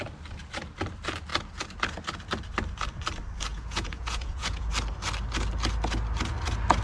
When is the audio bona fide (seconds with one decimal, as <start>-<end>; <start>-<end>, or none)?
0.0-3.5; 4.7-6.8